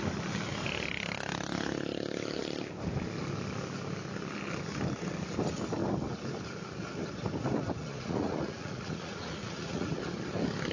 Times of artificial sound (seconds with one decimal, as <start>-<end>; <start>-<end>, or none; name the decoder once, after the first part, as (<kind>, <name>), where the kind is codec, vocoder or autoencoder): 7.8-10.0 (vocoder, Vocos)